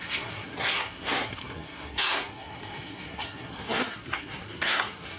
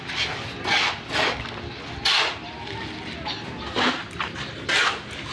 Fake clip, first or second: first